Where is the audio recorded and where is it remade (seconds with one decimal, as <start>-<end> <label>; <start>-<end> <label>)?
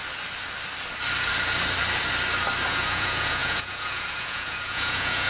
0.0-2.7 recorded; 2.7-5.3 remade